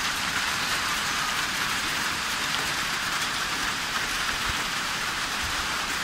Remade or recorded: remade